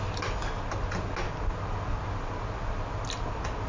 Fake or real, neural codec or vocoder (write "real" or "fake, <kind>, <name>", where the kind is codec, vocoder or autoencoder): real